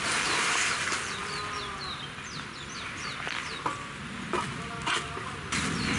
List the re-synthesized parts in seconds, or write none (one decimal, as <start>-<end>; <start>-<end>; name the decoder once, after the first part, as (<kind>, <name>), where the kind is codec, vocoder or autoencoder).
none